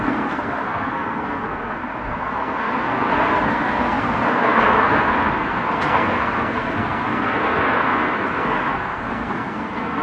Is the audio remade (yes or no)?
yes